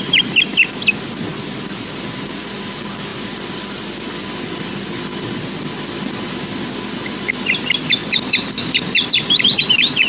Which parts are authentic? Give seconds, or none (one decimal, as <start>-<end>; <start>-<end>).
0.0-10.1